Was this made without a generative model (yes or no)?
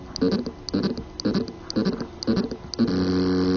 yes